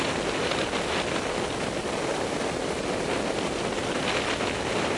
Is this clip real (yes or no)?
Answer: no